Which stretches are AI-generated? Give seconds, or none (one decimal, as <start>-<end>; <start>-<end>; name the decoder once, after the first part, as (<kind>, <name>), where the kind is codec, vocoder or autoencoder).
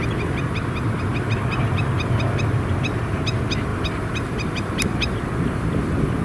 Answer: 3.7-6.2 (vocoder, BigVGAN v2)